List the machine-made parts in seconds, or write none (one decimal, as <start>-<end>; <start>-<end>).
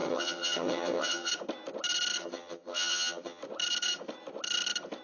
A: 0.0-1.3; 2.2-3.4